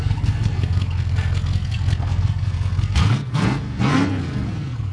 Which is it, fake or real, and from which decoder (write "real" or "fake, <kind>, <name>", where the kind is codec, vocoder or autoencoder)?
fake, codec, SNAC